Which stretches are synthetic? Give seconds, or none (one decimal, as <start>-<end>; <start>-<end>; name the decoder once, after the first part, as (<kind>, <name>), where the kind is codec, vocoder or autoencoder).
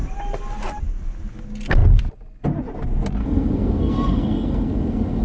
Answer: 3.2-5.2 (codec, SNAC)